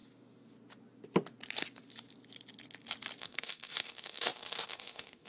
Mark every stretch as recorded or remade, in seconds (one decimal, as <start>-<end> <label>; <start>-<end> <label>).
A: 0.0-3.2 recorded; 3.2-5.3 remade